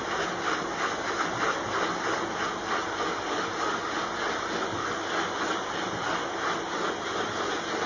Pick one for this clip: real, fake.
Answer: real